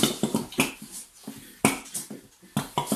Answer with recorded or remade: recorded